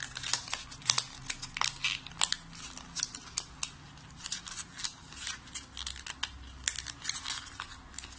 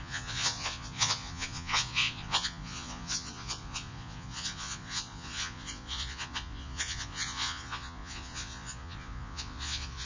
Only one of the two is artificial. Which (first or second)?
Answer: second